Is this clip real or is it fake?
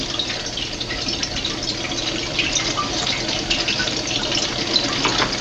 real